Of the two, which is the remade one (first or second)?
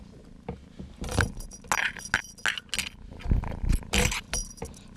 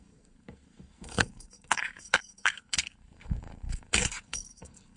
second